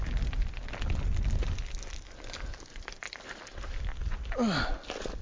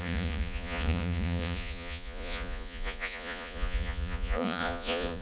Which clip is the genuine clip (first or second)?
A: first